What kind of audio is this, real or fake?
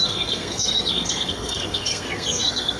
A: fake